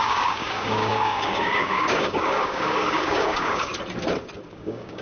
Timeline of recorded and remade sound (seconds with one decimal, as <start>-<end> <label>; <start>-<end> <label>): 0.0-3.7 remade; 3.7-4.5 recorded; 4.5-5.0 remade